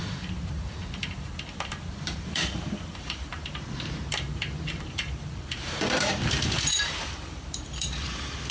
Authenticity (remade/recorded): remade